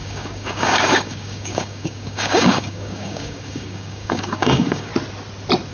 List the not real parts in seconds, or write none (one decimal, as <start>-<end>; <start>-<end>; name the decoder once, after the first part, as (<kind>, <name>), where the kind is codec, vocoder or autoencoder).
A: 0.0-4.9 (codec, DAC)